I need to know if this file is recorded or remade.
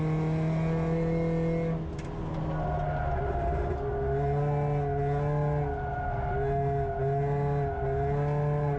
recorded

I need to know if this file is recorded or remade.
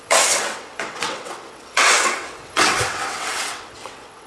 remade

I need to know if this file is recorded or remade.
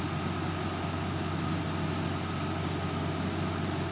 recorded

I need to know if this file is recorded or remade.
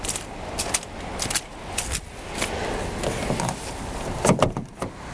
recorded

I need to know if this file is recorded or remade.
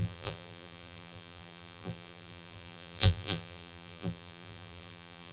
remade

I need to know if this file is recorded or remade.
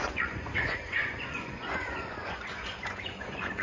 remade